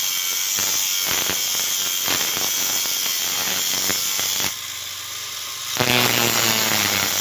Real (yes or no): yes